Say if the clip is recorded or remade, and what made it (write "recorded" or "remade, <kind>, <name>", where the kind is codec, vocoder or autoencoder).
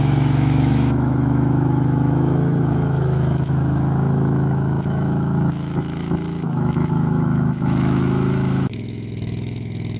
remade, autoencoder, DAC-VAE